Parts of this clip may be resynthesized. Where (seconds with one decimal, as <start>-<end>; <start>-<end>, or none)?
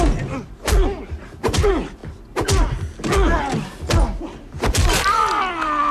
none